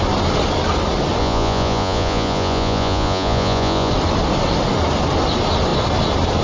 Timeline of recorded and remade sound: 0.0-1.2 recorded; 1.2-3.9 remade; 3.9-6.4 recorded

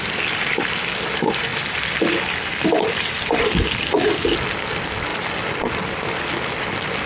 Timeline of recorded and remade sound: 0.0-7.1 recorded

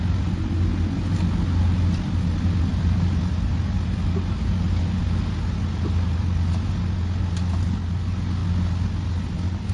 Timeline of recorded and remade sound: 0.0-9.7 recorded

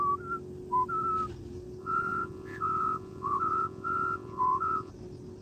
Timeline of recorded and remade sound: 0.0-1.8 recorded; 1.8-4.9 remade; 4.9-5.4 recorded

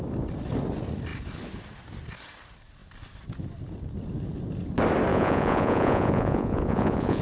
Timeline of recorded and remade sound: 0.0-5.1 recorded; 5.1-7.2 remade

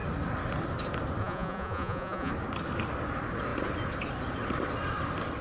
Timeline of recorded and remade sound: 0.0-1.2 recorded; 1.2-2.3 remade; 2.3-5.4 recorded

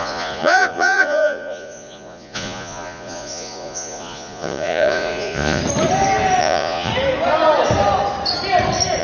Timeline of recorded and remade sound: 0.0-5.6 remade; 5.6-6.4 recorded; 6.4-6.9 remade; 6.9-9.0 recorded

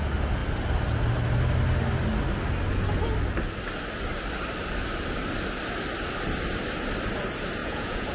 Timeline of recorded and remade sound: 0.0-7.6 recorded; 7.6-8.1 remade